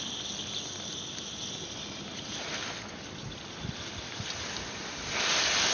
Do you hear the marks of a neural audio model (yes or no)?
no